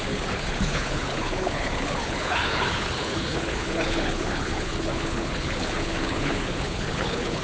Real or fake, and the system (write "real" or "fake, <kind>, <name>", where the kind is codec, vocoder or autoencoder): fake, codec, HILCodec